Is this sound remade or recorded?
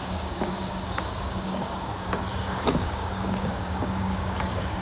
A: remade